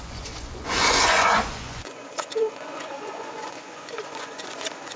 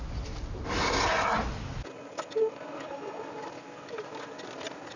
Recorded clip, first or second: second